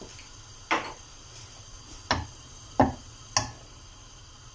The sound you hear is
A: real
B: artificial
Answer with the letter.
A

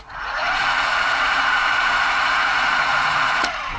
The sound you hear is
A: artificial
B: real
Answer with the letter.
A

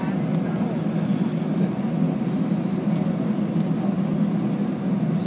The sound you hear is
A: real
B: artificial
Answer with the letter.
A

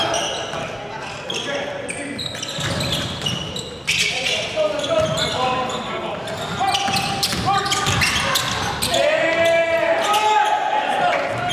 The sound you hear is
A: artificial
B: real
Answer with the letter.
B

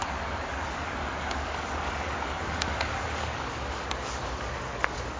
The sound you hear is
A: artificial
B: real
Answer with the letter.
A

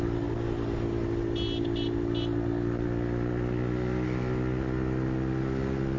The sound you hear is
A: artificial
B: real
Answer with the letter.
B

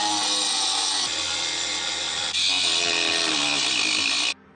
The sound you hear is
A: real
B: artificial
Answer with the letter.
A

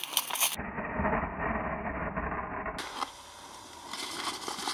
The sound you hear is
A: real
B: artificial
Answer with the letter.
A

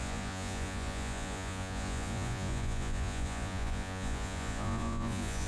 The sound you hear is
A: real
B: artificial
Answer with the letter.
B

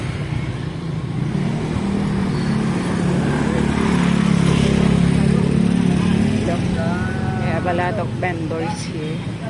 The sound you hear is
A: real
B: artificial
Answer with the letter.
A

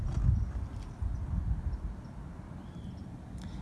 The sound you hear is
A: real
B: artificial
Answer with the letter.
A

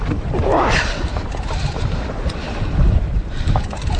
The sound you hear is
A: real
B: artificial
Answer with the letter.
B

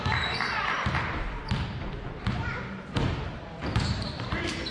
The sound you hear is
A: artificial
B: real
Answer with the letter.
A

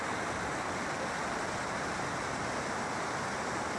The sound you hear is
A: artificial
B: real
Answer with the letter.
B